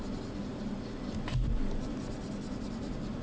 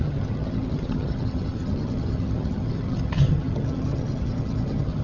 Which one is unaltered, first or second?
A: first